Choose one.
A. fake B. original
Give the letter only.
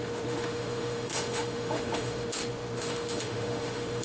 A